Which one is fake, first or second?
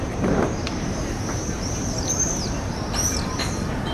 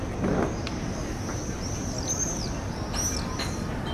first